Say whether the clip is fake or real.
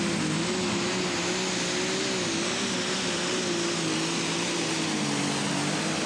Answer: real